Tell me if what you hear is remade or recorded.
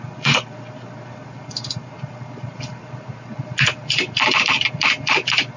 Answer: remade